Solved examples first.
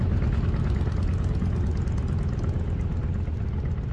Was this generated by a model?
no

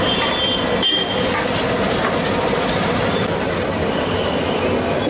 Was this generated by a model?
no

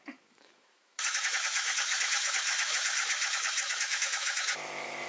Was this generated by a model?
yes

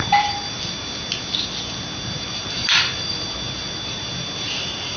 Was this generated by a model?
no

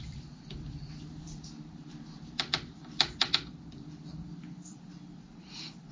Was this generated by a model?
yes